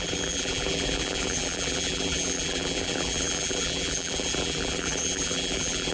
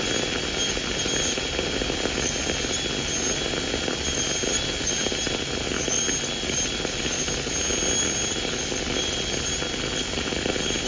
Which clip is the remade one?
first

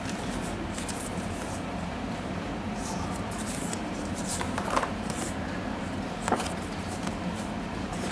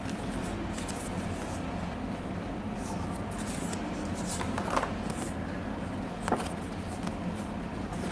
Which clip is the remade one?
first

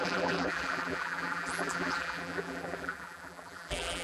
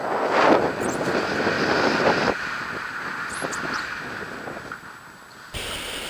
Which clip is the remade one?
first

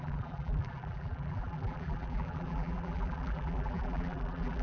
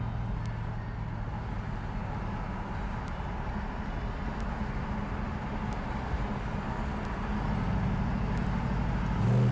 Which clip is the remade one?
first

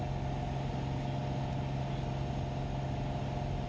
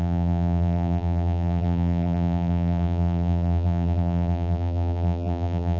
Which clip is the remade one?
second